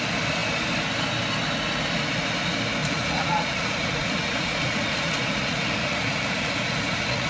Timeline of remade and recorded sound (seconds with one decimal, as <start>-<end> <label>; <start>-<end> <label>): 0.0-2.8 recorded; 2.8-7.3 remade